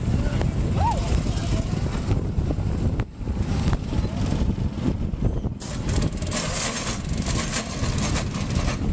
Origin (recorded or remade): recorded